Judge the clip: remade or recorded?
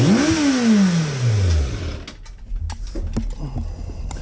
recorded